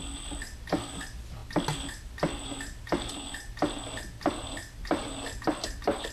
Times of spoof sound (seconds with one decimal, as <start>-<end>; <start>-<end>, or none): none